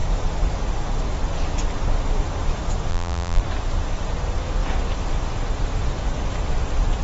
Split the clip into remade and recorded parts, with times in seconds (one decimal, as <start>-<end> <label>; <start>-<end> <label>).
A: 0.0-2.9 recorded; 2.9-3.4 remade; 3.4-7.0 recorded